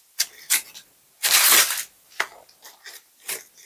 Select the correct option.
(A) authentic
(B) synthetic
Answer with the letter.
A